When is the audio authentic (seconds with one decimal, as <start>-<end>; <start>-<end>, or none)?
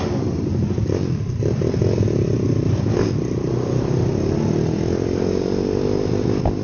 0.0-6.6